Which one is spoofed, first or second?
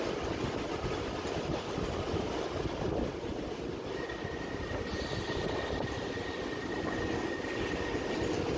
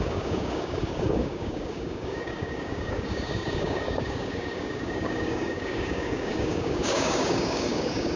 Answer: second